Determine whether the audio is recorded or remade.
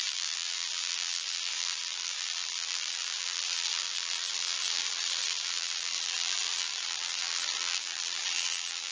remade